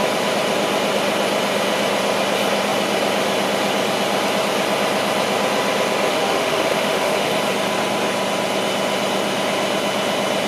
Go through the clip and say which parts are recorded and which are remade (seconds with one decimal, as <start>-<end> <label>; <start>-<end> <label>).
0.0-6.1 recorded; 6.1-7.3 remade; 7.3-10.5 recorded